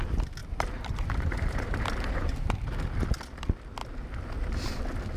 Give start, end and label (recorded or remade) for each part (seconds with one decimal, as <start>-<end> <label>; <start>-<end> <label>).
0.0-0.4 recorded; 0.4-2.5 remade; 2.5-5.2 recorded